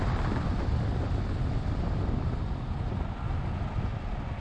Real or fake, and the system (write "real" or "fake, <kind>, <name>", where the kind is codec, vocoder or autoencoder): real